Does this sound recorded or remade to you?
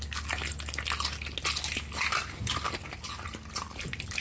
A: recorded